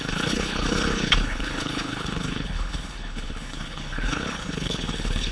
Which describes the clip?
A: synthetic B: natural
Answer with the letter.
A